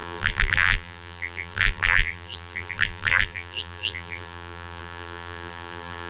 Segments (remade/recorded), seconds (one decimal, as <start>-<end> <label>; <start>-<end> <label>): 0.0-6.1 remade